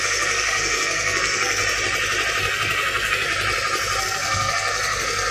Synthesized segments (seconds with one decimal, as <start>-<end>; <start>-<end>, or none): 0.0-1.6; 2.4-3.3; 4.0-5.3

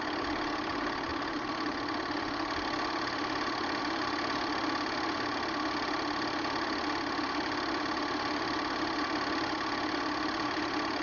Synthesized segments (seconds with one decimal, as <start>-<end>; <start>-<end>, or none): none

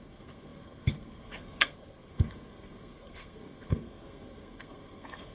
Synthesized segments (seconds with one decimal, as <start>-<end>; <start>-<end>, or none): 0.0-5.3

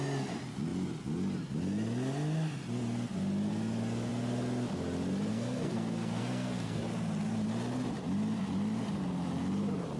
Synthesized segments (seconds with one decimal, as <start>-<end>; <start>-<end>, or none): 5.3-6.8

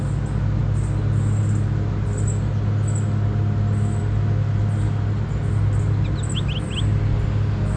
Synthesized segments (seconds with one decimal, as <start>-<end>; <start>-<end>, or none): none

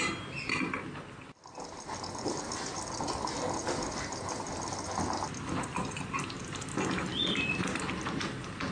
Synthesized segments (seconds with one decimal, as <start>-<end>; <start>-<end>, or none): none

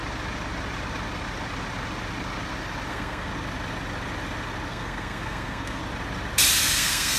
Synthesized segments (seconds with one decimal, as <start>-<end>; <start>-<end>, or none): 2.9-3.3; 4.7-5.8; 6.6-7.2